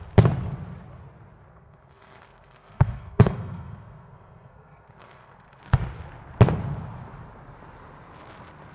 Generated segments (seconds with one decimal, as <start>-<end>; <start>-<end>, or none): 1.5-5.6